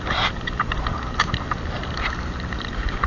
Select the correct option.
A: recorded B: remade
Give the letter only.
A